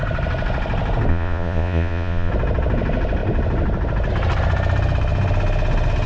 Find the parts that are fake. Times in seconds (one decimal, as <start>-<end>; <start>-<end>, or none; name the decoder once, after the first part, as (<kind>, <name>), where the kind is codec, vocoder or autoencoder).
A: 1.1-2.3 (vocoder, Vocos)